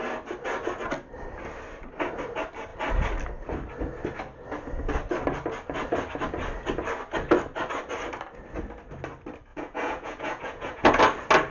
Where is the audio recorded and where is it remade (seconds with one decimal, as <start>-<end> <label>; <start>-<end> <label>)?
0.0-9.5 recorded; 9.5-11.0 remade; 11.0-11.5 recorded